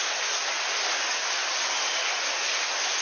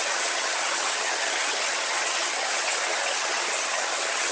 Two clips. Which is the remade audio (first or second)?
second